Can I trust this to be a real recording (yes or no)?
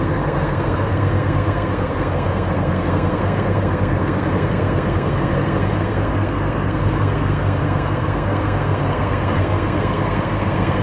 no